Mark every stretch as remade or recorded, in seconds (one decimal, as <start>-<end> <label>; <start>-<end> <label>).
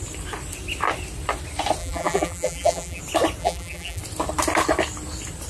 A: 0.0-1.8 recorded; 1.8-3.0 remade; 3.0-3.4 recorded; 3.4-4.0 remade; 4.0-5.5 recorded